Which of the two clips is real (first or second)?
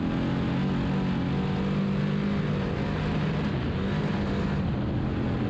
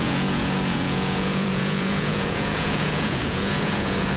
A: first